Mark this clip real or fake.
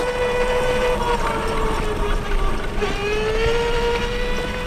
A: real